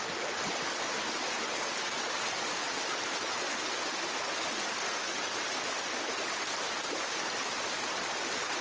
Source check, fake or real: real